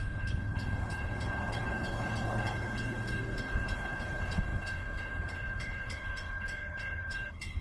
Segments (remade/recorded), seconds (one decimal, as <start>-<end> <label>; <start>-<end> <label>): 0.0-7.6 remade